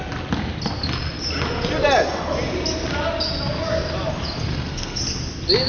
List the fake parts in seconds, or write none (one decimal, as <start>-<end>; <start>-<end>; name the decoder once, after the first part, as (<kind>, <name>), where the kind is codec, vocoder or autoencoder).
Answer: 4.5-5.0 (codec, SNAC)